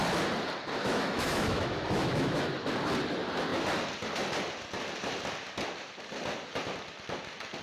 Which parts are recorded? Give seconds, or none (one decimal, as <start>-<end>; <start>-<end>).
0.0-0.8; 2.4-7.6